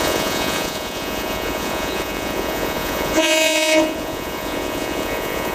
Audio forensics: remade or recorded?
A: remade